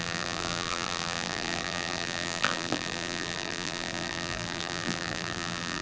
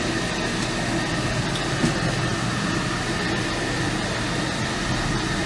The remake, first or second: first